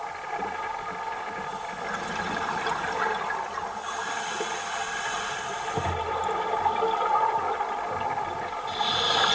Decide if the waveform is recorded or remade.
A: recorded